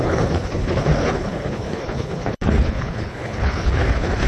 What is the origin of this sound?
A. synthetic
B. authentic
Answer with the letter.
A